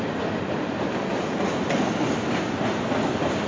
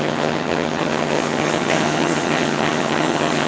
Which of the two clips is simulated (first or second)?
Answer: second